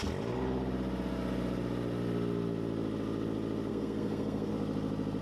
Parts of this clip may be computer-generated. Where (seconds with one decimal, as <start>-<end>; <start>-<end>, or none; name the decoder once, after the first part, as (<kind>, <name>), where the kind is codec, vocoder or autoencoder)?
3.7-4.5 (codec, SNAC)